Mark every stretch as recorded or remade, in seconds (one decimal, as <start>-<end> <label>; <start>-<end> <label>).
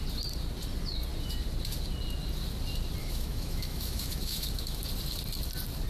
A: 0.0-3.0 recorded; 3.0-4.8 remade; 4.8-5.9 recorded